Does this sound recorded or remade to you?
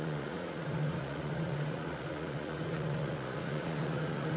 remade